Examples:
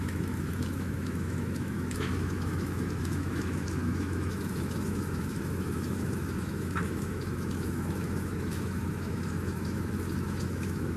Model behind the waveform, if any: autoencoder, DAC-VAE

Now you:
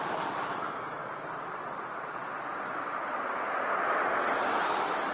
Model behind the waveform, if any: none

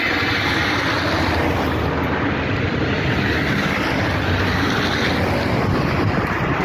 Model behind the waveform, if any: none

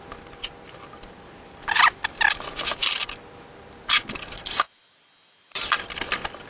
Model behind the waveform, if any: none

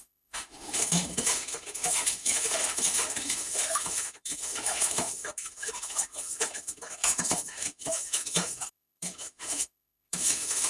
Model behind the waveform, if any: autoencoder, DAC-VAE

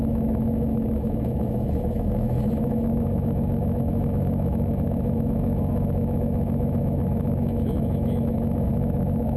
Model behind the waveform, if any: autoencoder, DAC-VAE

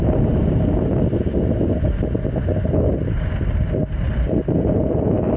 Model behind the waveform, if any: none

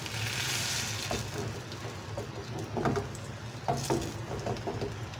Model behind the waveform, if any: none